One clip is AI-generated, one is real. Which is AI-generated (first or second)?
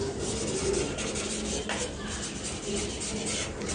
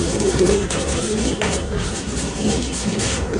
second